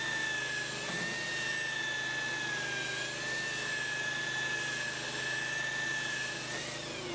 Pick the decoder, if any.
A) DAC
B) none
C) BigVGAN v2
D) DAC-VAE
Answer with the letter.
B